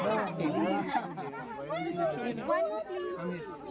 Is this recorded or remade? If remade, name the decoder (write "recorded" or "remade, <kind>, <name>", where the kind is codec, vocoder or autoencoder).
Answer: recorded